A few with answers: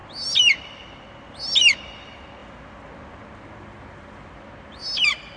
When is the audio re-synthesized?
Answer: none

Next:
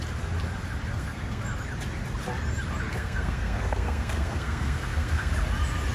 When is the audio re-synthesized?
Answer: 0.9-1.4 (codec, SNAC); 2.9-5.3

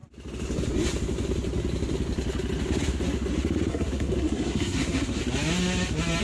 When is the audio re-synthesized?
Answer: 3.7-5.2 (codec, SNAC)

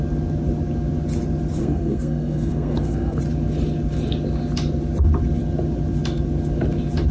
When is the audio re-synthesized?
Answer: 1.6-3.2 (codec, SNAC)

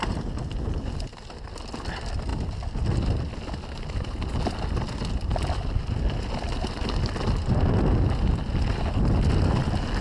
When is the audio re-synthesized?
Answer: none

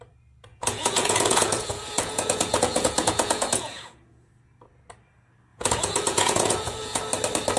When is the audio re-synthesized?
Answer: 0.5-4.3 (vocoder, Vocos); 5.5-7.0

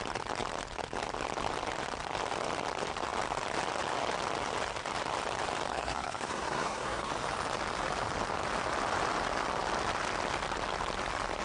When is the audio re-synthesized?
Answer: 5.7-7.1 (codec, SNAC)